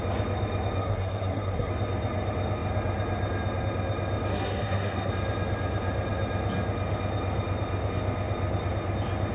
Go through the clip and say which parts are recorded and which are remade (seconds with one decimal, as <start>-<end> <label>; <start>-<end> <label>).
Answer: 0.0-0.8 recorded; 0.8-1.7 remade; 1.7-4.3 recorded; 4.3-5.1 remade; 5.1-9.3 recorded